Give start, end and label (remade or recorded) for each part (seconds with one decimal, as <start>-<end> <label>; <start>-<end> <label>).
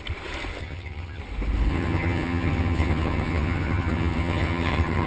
0.0-0.6 recorded; 0.6-1.2 remade; 1.2-1.7 recorded; 1.7-5.1 remade